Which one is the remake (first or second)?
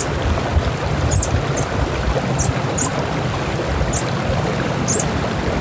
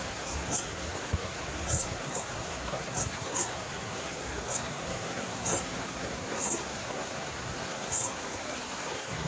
second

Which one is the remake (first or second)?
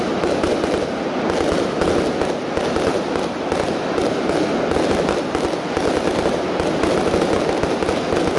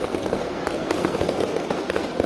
second